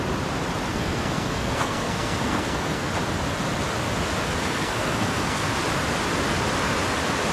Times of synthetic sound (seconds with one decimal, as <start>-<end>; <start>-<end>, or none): 0.7-2.9; 4.4-5.5